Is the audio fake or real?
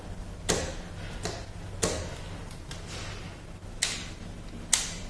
real